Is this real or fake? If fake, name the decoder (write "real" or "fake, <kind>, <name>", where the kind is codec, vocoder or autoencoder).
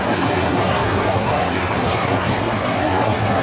fake, codec, SNAC